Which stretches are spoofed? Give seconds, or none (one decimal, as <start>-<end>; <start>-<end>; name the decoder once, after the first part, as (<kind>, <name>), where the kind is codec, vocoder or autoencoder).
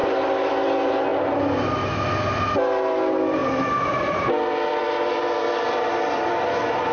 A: 0.0-0.5 (vocoder, BigVGAN v2); 3.4-6.9